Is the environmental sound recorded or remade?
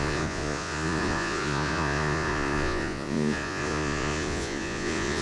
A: remade